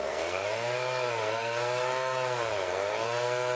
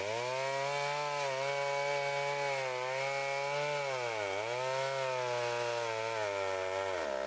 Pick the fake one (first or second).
first